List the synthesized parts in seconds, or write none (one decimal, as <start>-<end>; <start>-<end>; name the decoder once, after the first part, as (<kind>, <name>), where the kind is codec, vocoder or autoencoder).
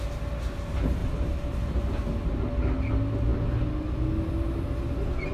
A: none